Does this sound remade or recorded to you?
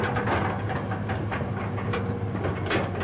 recorded